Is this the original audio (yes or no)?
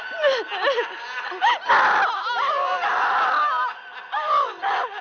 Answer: yes